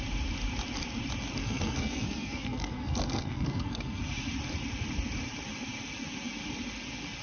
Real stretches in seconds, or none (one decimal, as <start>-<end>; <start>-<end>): 0.0-1.4; 4.0-7.2